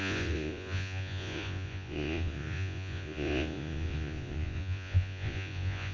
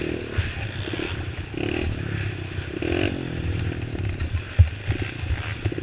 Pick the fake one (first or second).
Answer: first